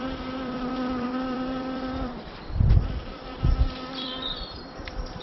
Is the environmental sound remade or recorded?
remade